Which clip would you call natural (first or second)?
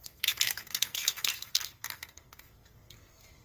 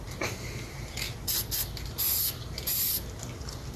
second